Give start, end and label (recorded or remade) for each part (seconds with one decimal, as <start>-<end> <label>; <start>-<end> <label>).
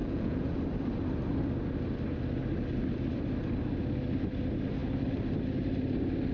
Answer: 0.0-0.6 remade; 0.6-6.3 recorded